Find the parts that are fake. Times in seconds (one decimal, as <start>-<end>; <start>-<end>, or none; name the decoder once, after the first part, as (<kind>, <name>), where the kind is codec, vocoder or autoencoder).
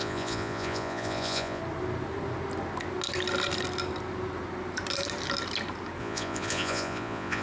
0.0-1.6 (vocoder, Vocos); 6.0-7.4